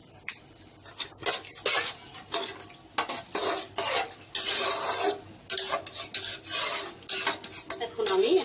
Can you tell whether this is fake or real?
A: real